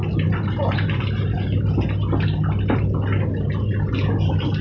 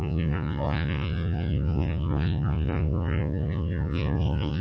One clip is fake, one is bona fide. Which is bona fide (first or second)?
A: first